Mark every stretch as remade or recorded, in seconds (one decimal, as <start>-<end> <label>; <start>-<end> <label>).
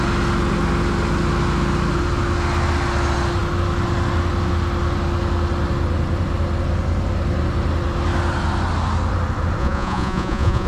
0.0-9.6 recorded; 9.6-10.7 remade